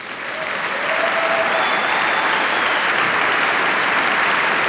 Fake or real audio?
real